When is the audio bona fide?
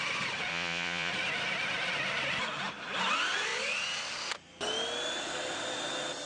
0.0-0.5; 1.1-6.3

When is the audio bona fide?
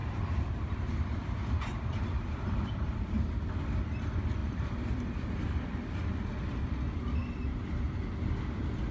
2.9-4.4; 5.2-7.2; 7.7-8.9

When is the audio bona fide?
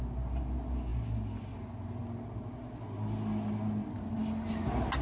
0.0-5.0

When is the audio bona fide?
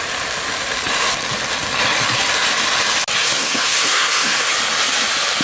0.0-3.2; 4.5-5.4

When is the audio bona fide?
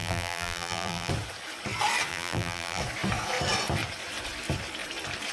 1.1-2.1; 2.8-5.3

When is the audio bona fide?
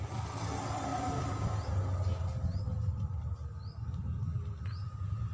0.0-5.3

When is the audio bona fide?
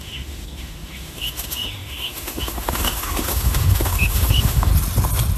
4.7-5.4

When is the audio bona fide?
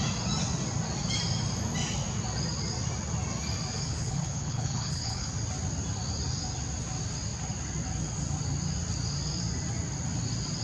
0.0-3.9; 5.3-10.6